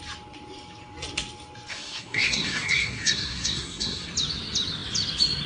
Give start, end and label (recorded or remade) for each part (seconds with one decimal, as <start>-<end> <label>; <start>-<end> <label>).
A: 0.0-1.7 recorded; 1.7-4.1 remade; 4.1-5.5 recorded